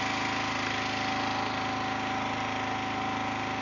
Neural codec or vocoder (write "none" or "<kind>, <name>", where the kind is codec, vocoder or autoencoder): none